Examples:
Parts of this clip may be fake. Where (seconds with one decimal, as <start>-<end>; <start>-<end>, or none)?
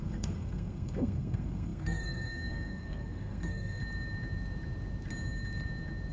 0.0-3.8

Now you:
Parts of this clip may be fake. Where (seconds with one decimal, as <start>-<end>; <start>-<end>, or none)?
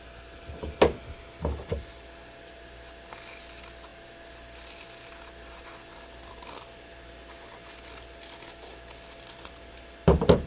none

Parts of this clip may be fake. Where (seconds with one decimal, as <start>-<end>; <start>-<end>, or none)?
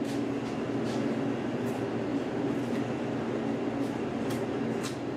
2.1-3.2